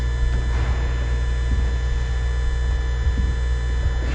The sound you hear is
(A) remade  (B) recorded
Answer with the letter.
B